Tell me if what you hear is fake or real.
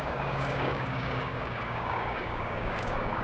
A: fake